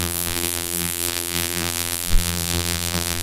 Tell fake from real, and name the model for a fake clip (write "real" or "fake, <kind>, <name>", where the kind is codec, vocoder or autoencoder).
fake, vocoder, BigVGAN v2